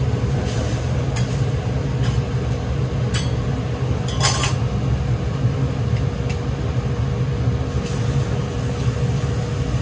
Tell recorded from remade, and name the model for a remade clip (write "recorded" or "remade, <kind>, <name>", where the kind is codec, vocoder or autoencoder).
recorded